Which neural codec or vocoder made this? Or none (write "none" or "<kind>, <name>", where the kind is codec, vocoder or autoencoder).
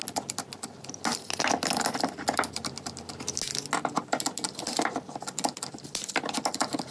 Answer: none